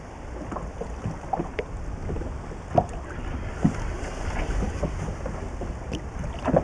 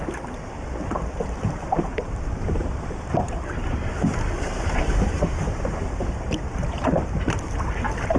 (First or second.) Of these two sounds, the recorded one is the first